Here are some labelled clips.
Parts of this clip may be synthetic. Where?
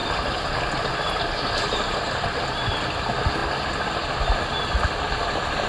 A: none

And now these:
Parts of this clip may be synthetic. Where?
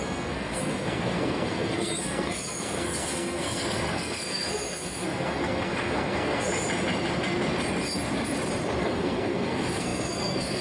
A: 0.0-6.5 (codec, SNAC); 8.8-10.6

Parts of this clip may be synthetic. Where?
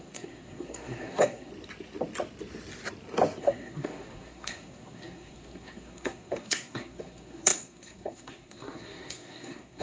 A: 0.0-1.5 (codec, SNAC); 3.4-9.8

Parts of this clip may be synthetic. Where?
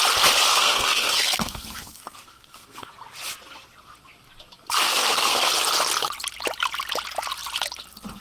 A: 0.5-2.9 (codec, SNAC); 4.8-5.5